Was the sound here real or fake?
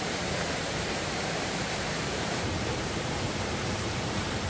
fake